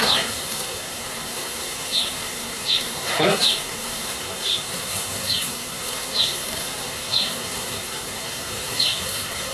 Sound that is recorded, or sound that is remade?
remade